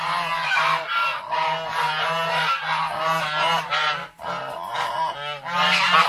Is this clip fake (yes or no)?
no